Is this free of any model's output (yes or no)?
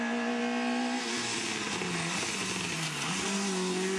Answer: yes